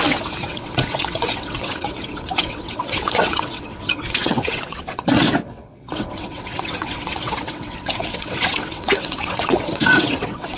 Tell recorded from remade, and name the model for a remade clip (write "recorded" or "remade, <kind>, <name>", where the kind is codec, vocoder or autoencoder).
remade, vocoder, WaveNeXt